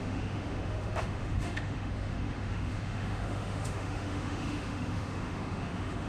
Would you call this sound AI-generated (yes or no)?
yes